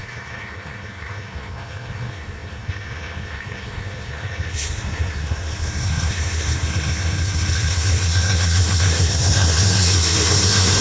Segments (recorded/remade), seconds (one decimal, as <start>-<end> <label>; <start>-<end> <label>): 0.0-10.8 remade